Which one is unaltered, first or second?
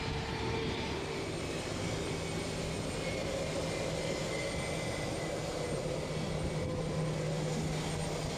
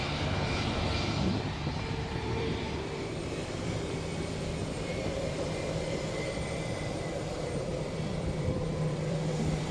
first